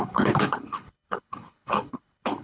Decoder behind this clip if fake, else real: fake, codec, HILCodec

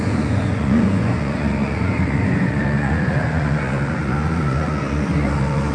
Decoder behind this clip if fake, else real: fake, vocoder, Vocos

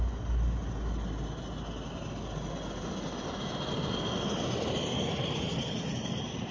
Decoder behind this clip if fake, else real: real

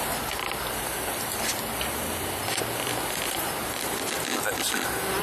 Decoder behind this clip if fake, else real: real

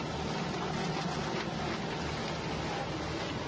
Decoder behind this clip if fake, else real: real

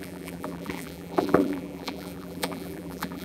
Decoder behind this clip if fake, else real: fake, vocoder, BigVGAN v2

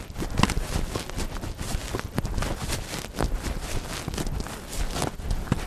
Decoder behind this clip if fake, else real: real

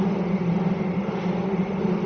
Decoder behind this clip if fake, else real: real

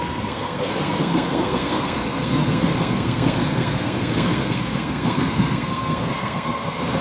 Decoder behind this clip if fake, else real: fake, codec, SNAC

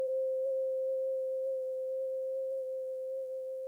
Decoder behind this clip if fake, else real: fake, vocoder, BigVGAN v2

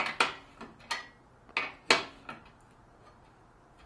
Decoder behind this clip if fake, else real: real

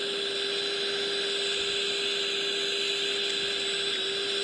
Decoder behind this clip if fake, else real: real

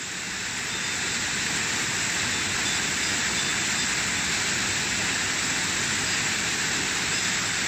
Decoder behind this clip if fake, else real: real